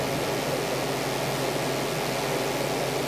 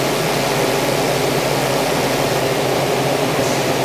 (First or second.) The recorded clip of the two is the first